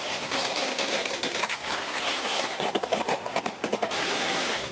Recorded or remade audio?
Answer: remade